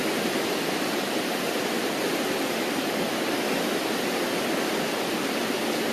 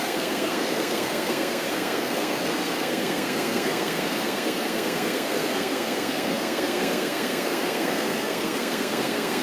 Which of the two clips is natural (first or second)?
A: first